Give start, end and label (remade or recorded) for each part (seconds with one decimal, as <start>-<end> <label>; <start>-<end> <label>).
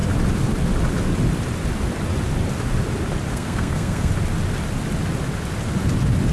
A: 0.0-3.3 recorded; 3.3-4.1 remade; 4.1-6.3 recorded